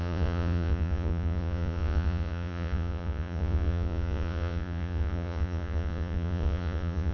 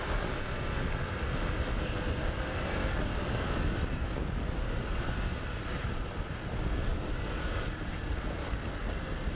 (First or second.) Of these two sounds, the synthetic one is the first